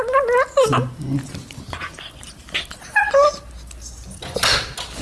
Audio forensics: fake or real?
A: real